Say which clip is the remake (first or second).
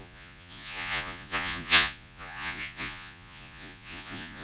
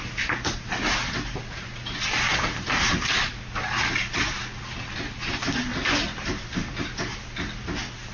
first